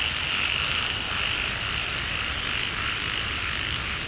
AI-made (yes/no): no